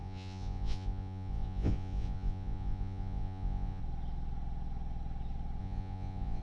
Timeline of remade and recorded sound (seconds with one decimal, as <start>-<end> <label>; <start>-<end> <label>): 0.0-3.8 remade; 3.8-5.6 recorded; 5.6-6.4 remade